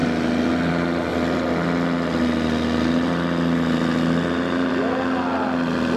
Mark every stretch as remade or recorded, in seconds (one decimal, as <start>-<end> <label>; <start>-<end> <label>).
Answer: 0.0-6.0 recorded